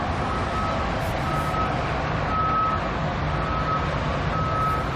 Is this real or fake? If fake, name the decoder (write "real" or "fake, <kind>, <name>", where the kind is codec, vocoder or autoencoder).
real